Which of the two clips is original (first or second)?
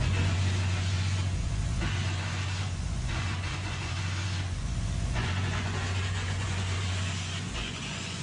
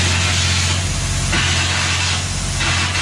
second